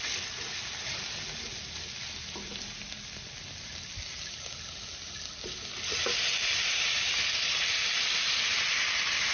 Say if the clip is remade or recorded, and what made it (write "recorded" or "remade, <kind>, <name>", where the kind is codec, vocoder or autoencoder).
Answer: recorded